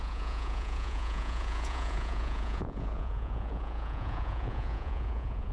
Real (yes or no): no